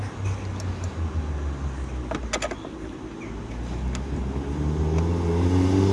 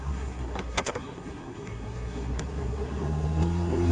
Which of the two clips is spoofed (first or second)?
second